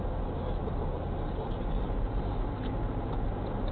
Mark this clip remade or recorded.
recorded